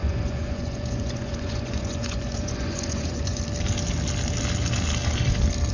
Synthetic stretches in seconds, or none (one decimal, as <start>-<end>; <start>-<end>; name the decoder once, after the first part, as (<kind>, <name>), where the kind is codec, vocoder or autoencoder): 0.0-3.4 (vocoder, Vocos)